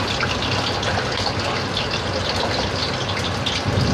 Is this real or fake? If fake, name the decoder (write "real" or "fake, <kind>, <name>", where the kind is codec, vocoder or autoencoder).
real